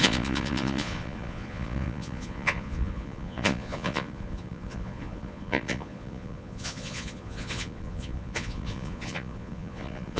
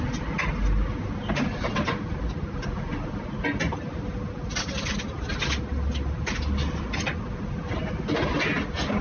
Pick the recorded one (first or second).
second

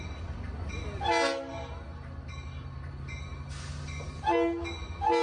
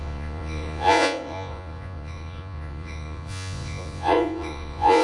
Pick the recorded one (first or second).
first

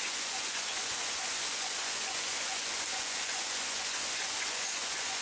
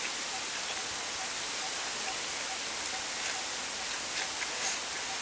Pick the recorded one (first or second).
second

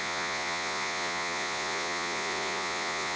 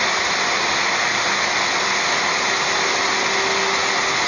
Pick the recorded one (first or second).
second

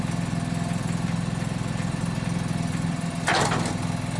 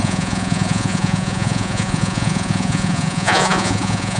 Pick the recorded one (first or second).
first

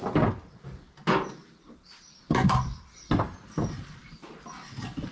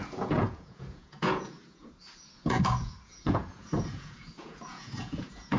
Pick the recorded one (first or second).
first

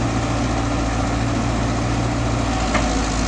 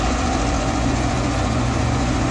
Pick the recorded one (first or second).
first